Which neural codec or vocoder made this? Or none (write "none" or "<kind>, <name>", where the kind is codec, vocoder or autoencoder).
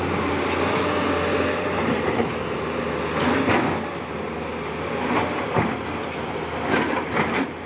none